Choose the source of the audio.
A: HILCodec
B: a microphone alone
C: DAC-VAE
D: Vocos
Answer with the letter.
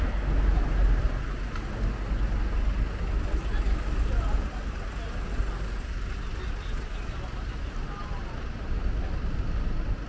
B